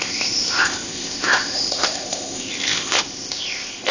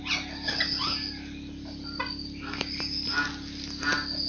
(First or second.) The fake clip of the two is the first